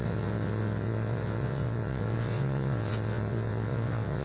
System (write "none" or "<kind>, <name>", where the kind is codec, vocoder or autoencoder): vocoder, WaveNeXt